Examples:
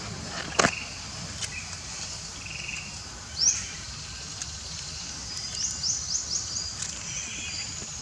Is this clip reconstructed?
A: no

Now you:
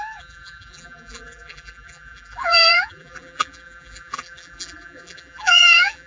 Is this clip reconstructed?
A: yes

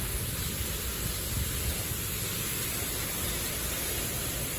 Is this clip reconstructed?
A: no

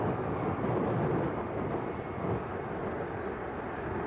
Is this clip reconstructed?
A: no